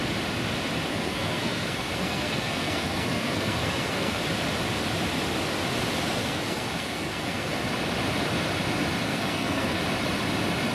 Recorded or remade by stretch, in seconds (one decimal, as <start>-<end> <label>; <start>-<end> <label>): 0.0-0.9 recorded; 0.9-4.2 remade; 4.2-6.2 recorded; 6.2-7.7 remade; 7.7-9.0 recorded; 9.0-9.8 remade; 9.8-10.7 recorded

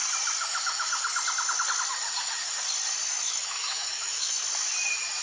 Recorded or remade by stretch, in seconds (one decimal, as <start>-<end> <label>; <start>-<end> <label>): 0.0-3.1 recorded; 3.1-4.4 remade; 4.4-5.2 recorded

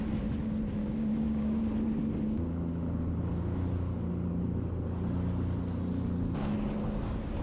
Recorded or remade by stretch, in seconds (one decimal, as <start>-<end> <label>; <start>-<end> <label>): 0.0-0.8 recorded; 0.8-1.6 remade; 1.6-7.4 recorded

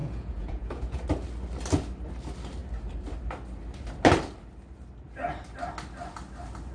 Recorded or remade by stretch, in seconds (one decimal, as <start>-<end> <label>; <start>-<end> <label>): 0.0-1.0 remade; 1.0-6.7 recorded

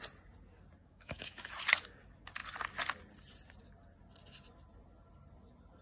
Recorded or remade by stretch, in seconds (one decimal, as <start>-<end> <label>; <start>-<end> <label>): 0.0-0.8 recorded; 0.8-1.5 remade; 1.5-5.8 recorded